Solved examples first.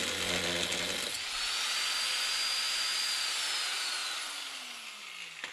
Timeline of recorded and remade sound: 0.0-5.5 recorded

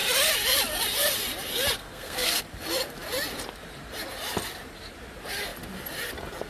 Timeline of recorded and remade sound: 0.0-1.8 recorded; 1.8-2.4 remade; 2.4-6.5 recorded

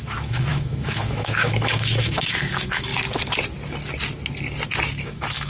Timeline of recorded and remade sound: 0.0-2.9 remade; 2.9-5.0 recorded; 5.0-5.5 remade